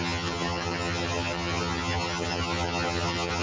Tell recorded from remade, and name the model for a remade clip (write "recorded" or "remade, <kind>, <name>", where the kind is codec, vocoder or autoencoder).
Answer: remade, vocoder, HiFi-GAN